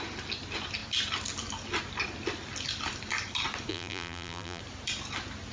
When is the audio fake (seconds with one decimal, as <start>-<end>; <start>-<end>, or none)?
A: 3.7-4.6